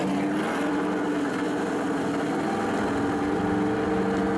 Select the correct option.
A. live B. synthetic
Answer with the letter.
A